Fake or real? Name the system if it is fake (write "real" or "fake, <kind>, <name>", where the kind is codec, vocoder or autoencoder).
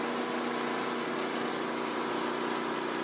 real